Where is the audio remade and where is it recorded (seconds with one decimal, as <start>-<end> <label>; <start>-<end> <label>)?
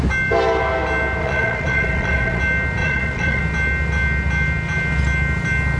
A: 0.0-1.2 recorded; 1.2-2.4 remade; 2.4-2.8 recorded; 2.8-3.4 remade; 3.4-5.8 recorded